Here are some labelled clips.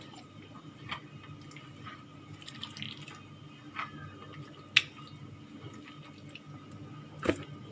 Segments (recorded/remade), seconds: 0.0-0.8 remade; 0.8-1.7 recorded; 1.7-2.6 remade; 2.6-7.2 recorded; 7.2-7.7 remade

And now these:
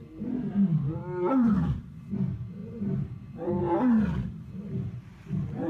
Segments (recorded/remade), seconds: 0.0-5.7 recorded

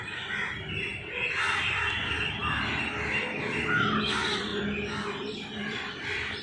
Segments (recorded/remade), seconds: 0.0-4.5 recorded; 4.5-6.4 remade

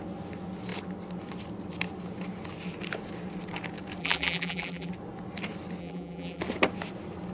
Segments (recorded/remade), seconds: 0.0-4.0 recorded; 4.0-4.9 remade; 4.9-5.8 recorded; 5.8-6.4 remade; 6.4-7.3 recorded

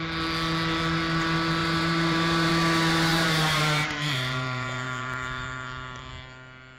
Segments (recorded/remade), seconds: 0.0-1.6 recorded; 1.6-2.5 remade; 2.5-3.1 recorded; 3.1-6.1 remade; 6.1-6.8 recorded